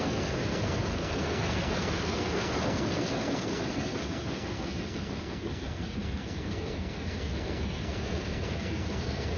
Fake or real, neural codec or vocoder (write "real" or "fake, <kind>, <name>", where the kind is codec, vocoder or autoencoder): fake, codec, SNAC